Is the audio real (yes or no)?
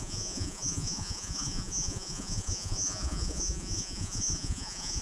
no